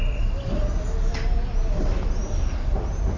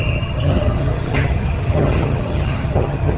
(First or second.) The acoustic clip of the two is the first